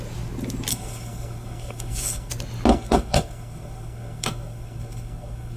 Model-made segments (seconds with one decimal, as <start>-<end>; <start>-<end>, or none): 0.7-2.3; 2.7-5.6